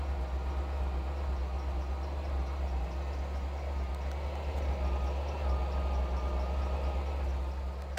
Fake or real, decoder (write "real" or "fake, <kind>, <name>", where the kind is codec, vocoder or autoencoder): real